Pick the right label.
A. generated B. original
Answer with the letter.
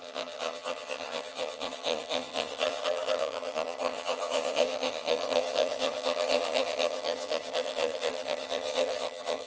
A